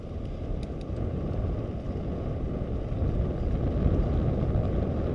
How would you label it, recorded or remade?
recorded